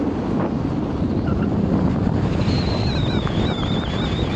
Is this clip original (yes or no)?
yes